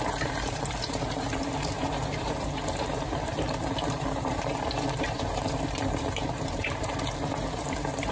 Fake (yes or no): yes